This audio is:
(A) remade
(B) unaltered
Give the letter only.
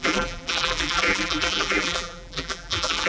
A